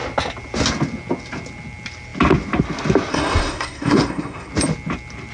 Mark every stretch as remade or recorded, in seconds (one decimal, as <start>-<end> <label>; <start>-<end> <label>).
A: 0.0-3.1 recorded; 3.1-4.5 remade; 4.5-5.3 recorded